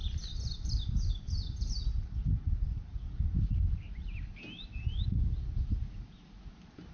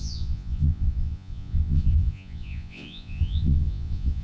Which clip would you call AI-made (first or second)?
second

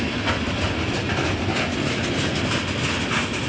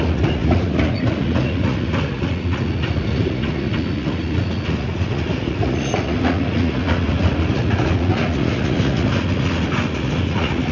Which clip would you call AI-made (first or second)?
second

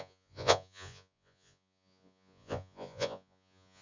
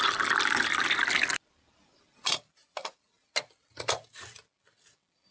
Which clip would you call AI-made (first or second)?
first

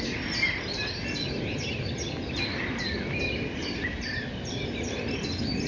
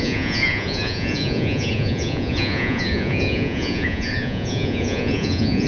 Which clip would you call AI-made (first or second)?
second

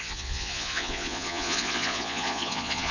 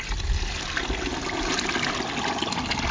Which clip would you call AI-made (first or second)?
first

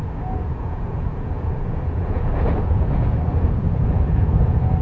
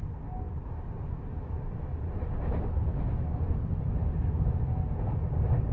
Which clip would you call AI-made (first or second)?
first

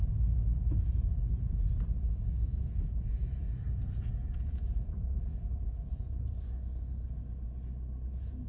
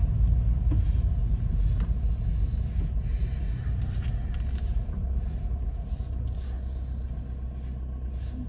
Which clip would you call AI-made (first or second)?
first